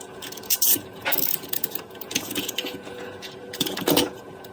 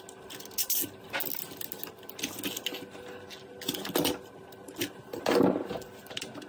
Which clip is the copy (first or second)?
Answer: first